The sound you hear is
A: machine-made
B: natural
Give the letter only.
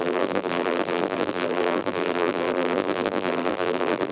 A